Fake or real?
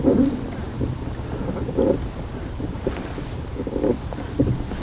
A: real